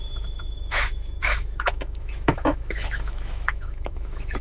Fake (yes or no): yes